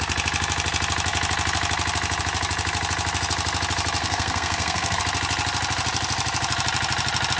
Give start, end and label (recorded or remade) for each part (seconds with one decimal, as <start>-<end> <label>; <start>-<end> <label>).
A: 0.0-4.0 recorded; 4.0-5.0 remade; 5.0-7.4 recorded